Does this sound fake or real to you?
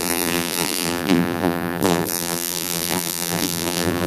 fake